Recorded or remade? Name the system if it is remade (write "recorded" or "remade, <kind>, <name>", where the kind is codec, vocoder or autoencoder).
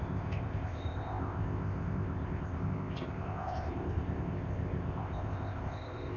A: remade, codec, ZipCodec